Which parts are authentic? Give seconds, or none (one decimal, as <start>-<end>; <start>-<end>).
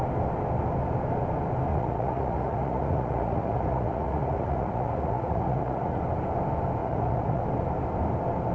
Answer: 0.0-1.7; 6.0-6.8; 7.4-8.5